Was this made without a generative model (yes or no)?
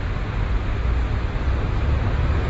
yes